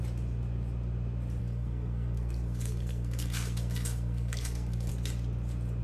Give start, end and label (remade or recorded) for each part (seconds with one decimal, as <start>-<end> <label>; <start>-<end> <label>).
0.0-1.4 recorded; 1.4-4.9 remade; 4.9-5.8 recorded